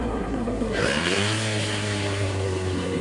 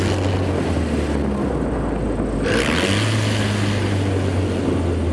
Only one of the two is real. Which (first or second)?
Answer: second